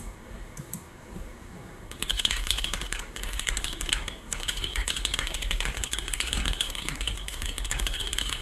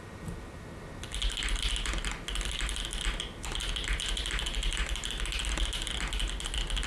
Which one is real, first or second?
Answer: second